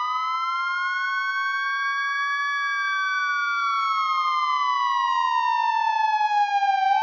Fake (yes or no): no